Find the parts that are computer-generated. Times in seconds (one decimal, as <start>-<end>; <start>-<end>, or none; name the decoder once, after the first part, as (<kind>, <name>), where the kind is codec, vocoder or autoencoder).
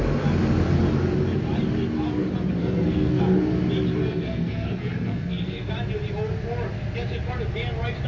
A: 2.6-3.2 (codec, SNAC); 4.0-5.7